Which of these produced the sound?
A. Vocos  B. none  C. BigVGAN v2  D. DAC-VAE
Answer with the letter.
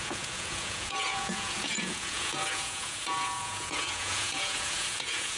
A